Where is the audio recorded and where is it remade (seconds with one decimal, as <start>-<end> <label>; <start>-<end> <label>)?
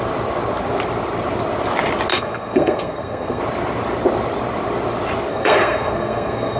0.0-2.1 recorded; 2.1-3.4 remade; 3.4-5.3 recorded; 5.3-6.6 remade